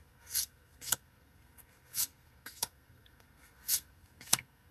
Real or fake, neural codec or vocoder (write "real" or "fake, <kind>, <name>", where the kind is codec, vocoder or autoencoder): fake, codec, SNAC